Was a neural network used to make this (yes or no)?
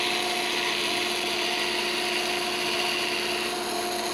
no